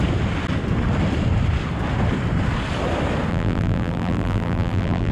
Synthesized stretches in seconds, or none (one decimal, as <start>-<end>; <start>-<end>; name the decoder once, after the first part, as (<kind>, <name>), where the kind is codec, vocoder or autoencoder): 3.3-5.1 (vocoder, BigVGAN v2)